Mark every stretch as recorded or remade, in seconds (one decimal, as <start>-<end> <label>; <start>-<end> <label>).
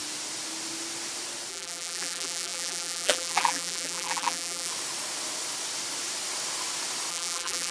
0.0-1.5 recorded; 1.5-4.7 remade; 4.7-7.1 recorded; 7.1-7.7 remade